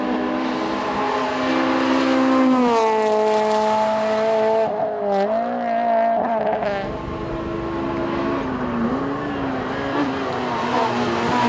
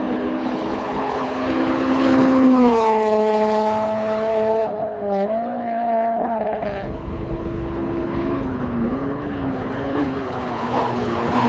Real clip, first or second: first